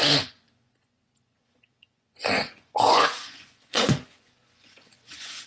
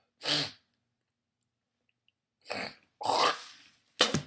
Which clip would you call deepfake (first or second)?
first